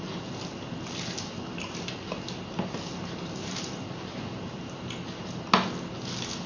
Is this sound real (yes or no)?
yes